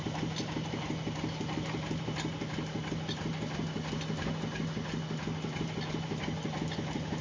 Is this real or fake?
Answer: real